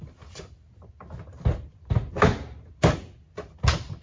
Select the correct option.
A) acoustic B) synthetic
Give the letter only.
A